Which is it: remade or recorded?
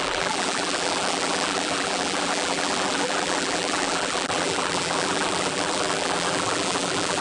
remade